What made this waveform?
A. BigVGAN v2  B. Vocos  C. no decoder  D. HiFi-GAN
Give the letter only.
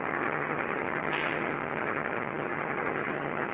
D